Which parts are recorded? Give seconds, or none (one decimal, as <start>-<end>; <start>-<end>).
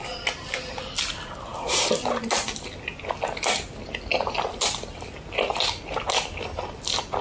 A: 0.0-7.2